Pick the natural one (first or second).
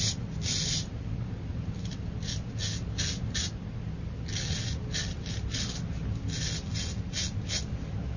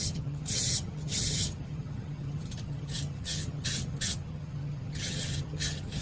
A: first